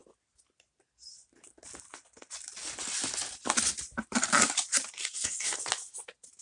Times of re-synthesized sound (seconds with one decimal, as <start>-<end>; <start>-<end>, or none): 5.0-5.6